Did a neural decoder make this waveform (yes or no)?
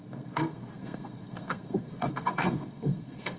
yes